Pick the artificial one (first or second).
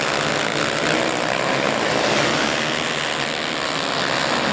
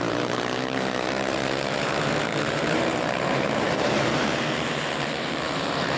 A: second